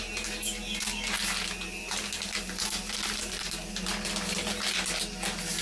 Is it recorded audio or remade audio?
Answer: recorded